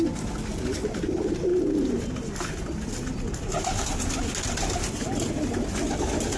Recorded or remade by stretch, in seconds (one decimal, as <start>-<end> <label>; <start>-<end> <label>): 0.0-6.4 recorded

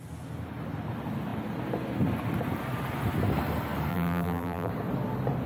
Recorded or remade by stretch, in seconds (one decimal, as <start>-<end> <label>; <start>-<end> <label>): 0.0-3.9 recorded; 3.9-4.7 remade; 4.7-5.5 recorded

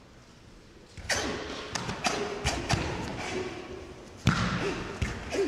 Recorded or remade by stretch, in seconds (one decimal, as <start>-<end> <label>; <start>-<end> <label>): 0.0-3.1 recorded; 3.1-4.1 remade; 4.1-5.5 recorded